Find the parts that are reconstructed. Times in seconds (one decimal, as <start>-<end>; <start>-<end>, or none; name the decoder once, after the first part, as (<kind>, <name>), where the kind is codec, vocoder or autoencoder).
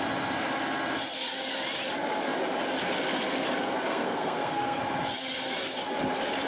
3.9-4.8 (codec, SNAC)